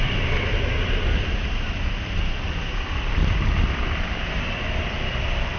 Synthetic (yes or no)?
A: no